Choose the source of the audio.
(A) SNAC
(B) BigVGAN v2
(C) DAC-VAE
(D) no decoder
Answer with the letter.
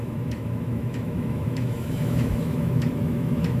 C